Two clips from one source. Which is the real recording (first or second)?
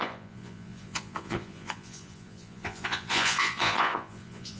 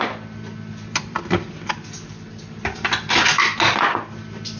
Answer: second